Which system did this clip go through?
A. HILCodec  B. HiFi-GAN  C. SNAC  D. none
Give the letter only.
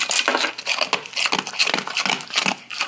D